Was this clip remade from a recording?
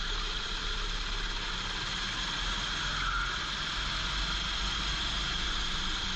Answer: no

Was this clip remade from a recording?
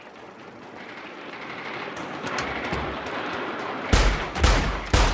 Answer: no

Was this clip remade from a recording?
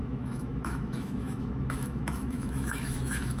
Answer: yes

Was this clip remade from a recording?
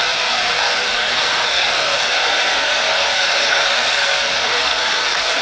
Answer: yes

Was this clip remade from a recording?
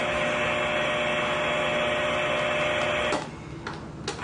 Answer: no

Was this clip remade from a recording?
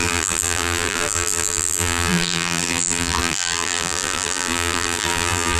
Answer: yes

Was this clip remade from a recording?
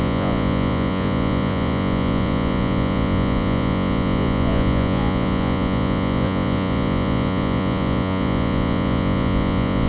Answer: yes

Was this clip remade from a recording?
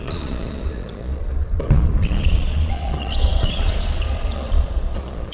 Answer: yes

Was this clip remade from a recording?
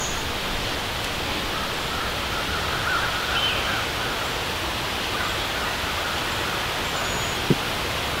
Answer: no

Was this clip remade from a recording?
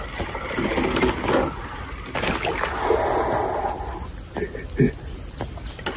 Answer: no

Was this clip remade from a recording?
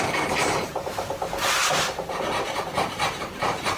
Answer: yes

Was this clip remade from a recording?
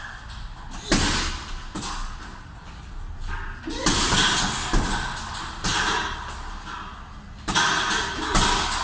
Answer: no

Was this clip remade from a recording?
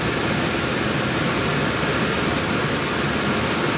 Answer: no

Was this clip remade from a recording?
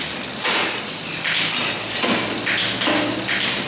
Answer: yes